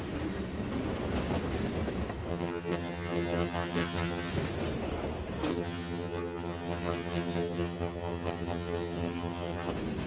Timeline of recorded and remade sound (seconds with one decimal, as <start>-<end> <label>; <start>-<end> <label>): 0.0-2.3 recorded; 2.3-4.3 remade; 4.3-5.5 recorded; 5.5-9.7 remade; 9.7-10.1 recorded